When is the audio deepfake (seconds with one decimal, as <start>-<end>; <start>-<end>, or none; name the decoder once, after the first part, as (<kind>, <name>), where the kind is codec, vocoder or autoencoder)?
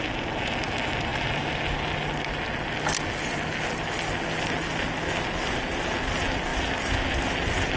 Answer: none